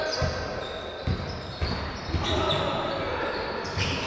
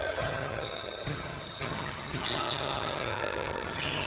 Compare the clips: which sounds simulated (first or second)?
second